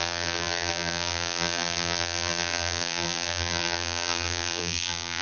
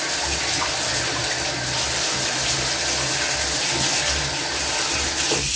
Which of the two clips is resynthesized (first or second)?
first